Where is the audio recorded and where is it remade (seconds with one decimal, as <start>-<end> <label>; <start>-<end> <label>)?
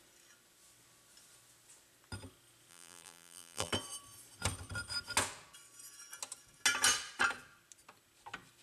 0.0-2.7 recorded; 2.7-3.7 remade; 3.7-8.6 recorded